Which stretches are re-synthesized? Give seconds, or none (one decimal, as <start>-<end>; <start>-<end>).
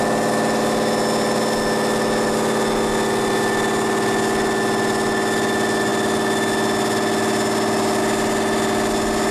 none